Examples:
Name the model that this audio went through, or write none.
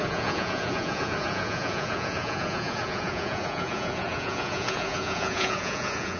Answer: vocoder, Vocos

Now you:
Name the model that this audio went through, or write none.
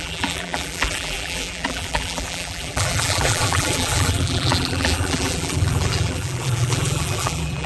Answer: vocoder, BigVGAN v2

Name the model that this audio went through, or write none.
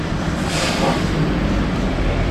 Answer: none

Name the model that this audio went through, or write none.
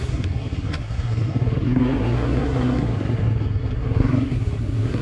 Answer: codec, SNAC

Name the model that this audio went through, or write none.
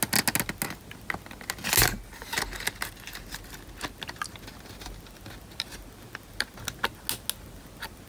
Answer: none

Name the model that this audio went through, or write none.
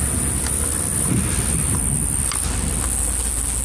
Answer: none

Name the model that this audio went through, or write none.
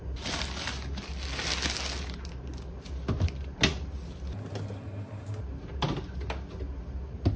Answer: none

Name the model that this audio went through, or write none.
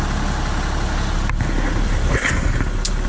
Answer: none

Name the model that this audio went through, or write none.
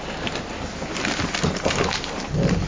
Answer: none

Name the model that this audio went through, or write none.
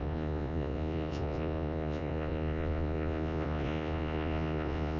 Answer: vocoder, Vocos